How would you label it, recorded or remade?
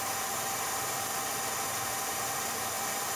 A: remade